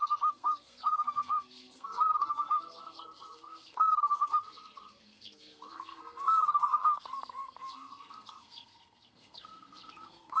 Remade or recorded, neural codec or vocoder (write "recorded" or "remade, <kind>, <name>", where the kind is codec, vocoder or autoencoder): remade, codec, SNAC